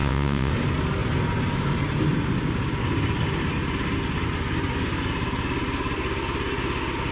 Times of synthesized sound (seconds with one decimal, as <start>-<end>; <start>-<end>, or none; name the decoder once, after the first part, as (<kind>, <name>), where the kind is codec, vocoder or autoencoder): 0.0-0.5 (vocoder, Vocos)

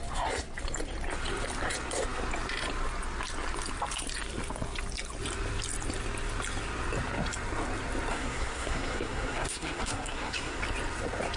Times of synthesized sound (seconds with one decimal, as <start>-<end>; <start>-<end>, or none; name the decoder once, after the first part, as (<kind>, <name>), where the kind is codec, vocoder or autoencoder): 8.1-10.6 (codec, SNAC)

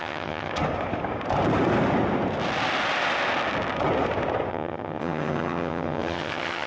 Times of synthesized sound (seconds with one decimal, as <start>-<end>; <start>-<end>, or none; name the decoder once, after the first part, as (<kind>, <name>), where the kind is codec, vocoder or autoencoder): 0.0-0.5 (vocoder, HiFi-GAN); 4.5-6.7

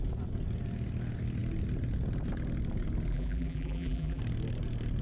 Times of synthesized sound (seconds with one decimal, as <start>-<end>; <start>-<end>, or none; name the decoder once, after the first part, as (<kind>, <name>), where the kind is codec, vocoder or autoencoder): 3.1-4.2 (vocoder, BigVGAN v2)

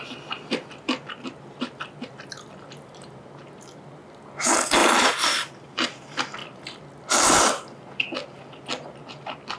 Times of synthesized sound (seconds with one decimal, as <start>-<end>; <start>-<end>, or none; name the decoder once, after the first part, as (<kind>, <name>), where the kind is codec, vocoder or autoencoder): 4.8-6.0 (vocoder, BigVGAN v2)

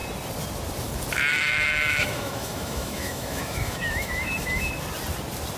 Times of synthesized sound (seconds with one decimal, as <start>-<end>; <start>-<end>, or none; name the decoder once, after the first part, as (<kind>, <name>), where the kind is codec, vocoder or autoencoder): 1.3-4.7 (autoencoder, DAC-VAE)